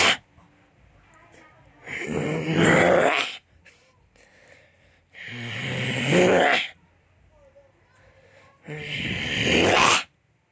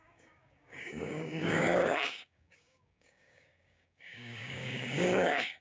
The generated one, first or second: second